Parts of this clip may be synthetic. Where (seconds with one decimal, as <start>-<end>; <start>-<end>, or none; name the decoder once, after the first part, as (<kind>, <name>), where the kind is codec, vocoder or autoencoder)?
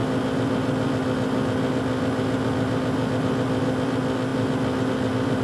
none